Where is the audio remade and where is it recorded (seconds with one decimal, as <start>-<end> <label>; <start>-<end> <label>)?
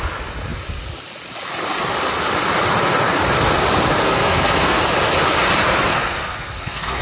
0.0-4.0 recorded; 4.0-4.8 remade; 4.8-5.9 recorded; 5.9-7.0 remade